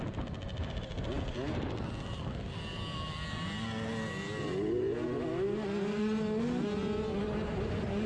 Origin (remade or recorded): recorded